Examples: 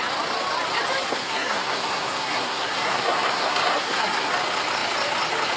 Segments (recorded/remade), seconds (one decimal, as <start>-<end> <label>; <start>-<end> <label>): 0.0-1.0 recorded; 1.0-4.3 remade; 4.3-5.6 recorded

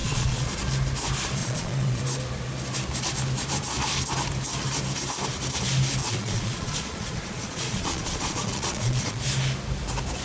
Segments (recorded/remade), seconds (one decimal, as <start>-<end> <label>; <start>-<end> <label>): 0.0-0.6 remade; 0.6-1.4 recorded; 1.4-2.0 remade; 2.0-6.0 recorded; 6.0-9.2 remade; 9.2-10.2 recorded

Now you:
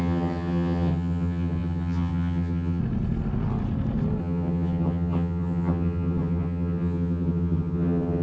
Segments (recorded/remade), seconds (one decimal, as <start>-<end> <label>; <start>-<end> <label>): 0.0-2.8 remade; 2.8-4.2 recorded; 4.2-8.2 remade

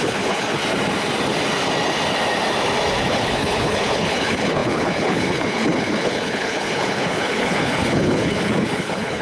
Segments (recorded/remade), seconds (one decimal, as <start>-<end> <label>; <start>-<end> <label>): 0.0-0.6 remade; 0.6-3.0 recorded; 3.0-9.2 remade

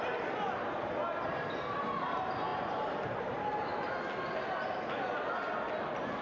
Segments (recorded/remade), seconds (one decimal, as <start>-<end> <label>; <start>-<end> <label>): 0.0-6.2 recorded

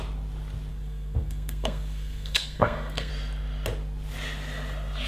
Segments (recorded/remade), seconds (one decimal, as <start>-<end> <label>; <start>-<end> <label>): 0.0-0.7 recorded; 0.7-3.1 remade; 3.1-5.1 recorded

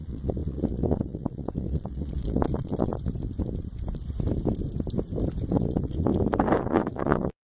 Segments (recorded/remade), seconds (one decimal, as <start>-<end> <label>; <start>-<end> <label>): 0.0-2.9 remade; 2.9-5.5 recorded; 5.5-6.1 remade; 6.1-6.6 recorded; 6.6-7.4 remade

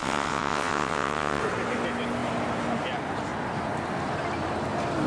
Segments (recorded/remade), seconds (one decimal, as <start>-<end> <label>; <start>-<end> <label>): 0.0-1.4 remade; 1.4-5.1 recorded